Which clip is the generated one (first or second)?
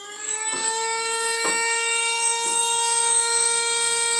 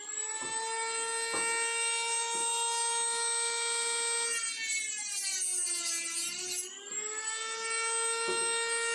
first